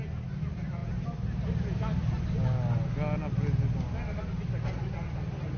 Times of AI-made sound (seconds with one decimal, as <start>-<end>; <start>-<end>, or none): none

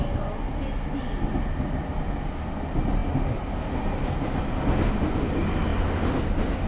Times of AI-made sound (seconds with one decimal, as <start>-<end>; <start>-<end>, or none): none

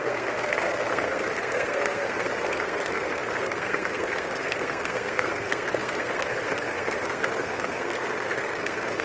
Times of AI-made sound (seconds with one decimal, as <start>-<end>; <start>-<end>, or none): 0.0-9.0

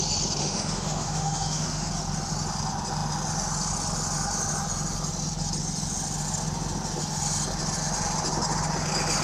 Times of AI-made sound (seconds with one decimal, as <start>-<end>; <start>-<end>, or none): 0.4-1.9